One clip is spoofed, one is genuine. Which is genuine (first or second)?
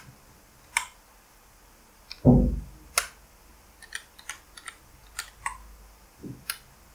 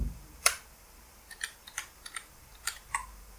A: first